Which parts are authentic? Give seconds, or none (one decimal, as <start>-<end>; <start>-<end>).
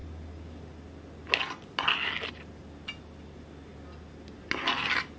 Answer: 0.0-5.2